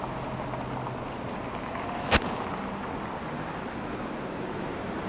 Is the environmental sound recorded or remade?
recorded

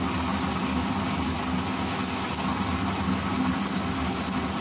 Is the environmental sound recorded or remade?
recorded